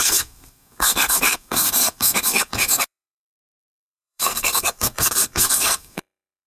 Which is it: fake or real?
fake